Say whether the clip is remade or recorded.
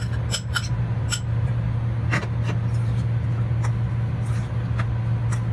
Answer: recorded